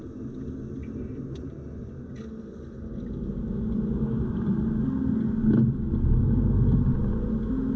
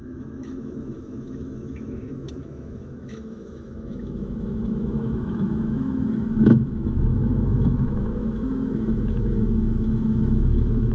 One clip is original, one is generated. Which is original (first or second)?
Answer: first